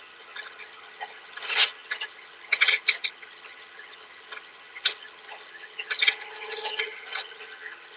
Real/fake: fake